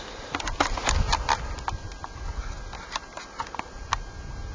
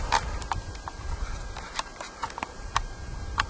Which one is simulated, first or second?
second